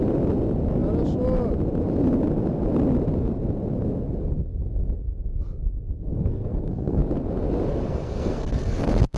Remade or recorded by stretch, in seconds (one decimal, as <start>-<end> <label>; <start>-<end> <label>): 0.0-6.1 recorded; 6.1-7.0 remade; 7.0-7.7 recorded; 7.7-9.2 remade